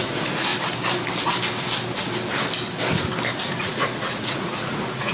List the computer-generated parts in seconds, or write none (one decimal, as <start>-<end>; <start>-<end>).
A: 0.0-0.5; 3.6-5.1